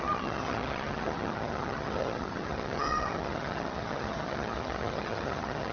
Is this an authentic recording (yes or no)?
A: no